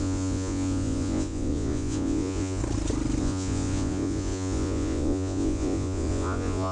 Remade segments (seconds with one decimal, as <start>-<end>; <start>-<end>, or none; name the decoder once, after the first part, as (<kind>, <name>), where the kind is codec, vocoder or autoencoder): 0.0-2.6 (vocoder, Vocos); 3.2-6.7